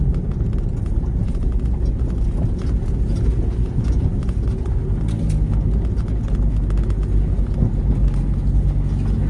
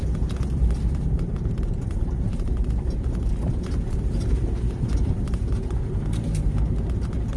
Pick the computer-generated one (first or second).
second